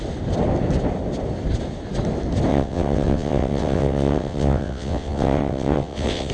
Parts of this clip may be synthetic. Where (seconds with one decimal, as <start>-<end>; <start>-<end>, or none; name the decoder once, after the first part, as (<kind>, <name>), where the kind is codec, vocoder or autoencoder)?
2.5-6.3 (vocoder, WaveNeXt)